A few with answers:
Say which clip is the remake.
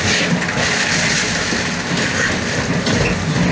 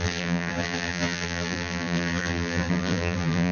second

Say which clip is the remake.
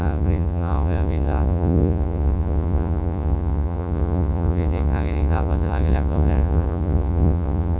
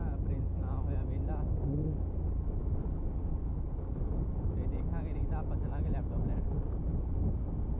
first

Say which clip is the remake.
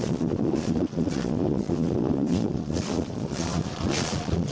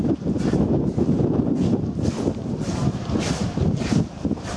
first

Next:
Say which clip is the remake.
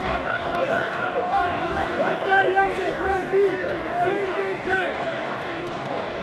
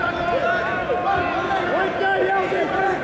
first